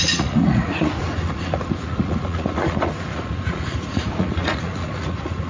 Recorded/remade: remade